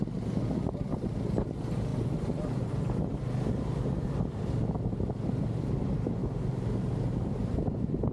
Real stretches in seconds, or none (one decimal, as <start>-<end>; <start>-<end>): 0.0-6.2